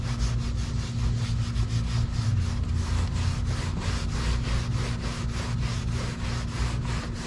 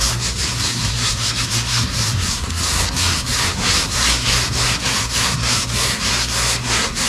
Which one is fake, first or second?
second